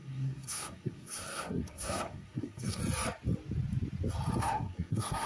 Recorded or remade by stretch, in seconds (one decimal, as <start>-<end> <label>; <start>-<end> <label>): 0.0-2.8 remade; 2.8-4.4 recorded; 4.4-5.3 remade